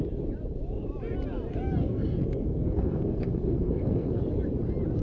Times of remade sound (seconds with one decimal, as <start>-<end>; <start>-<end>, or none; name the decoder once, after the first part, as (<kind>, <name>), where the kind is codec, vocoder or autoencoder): 1.8-4.2 (codec, SNAC)